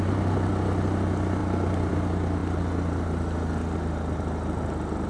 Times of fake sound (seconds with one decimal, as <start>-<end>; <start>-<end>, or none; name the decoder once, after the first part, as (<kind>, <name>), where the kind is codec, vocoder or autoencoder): none

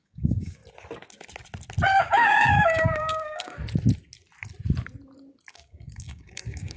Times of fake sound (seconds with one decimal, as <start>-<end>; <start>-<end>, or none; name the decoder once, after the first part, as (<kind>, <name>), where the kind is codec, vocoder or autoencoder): 0.0-0.6 (codec, DAC); 2.0-3.6; 5.5-6.8

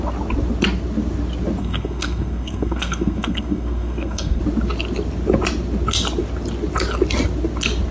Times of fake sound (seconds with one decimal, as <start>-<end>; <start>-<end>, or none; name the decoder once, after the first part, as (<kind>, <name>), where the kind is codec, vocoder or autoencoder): 1.6-4.4 (codec, SNAC)

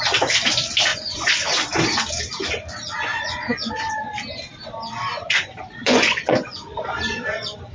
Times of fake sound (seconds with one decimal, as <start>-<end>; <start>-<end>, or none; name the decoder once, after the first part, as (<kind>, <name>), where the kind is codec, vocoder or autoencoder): 0.9-1.4 (vocoder, Vocos); 3.1-4.1; 5.8-7.0

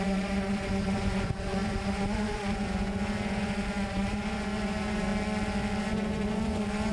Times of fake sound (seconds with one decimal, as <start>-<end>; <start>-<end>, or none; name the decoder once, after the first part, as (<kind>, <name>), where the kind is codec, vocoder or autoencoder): 0.0-5.1 (vocoder, Vocos); 5.8-6.9

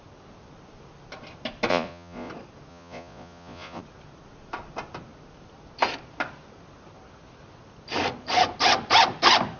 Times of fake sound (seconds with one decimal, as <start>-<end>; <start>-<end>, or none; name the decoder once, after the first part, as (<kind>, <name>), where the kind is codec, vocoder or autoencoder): 1.7-2.3 (vocoder, Vocos); 2.7-3.8

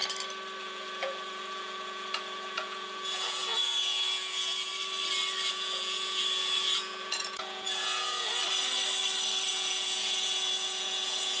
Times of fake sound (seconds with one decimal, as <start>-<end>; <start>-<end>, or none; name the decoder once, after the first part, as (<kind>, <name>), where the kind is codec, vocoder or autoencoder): 0.6-4.7 (vocoder, Vocos); 5.5-8.4; 9.5-11.4